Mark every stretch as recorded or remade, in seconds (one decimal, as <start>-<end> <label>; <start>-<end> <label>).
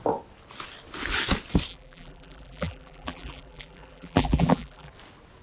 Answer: 0.0-1.7 recorded; 1.7-4.9 remade; 4.9-5.4 recorded